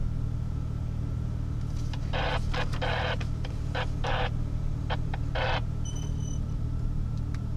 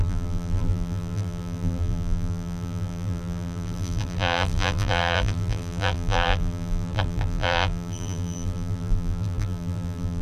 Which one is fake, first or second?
second